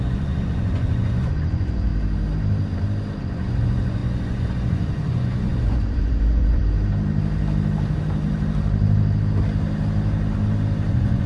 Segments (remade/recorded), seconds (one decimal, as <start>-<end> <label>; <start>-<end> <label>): 0.0-1.9 remade; 1.9-3.2 recorded; 3.2-6.6 remade; 6.6-10.9 recorded; 10.9-11.3 remade